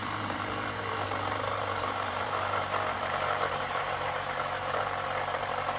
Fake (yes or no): yes